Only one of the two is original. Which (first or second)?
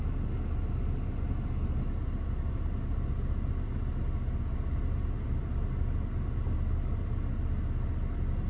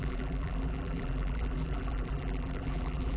first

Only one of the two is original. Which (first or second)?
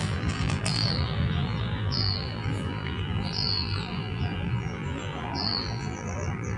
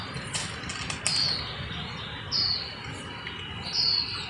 second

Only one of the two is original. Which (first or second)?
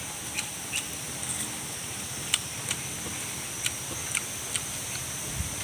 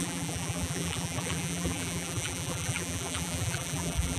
first